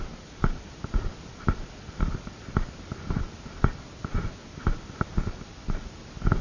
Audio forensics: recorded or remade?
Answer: recorded